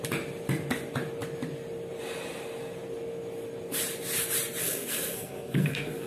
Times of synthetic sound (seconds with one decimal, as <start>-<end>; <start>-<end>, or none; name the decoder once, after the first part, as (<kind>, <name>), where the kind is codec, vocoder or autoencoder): 4.6-6.1 (codec, SNAC)